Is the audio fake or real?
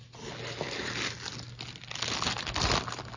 real